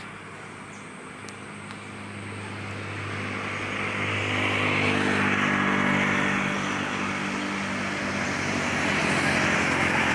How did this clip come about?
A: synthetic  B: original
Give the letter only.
B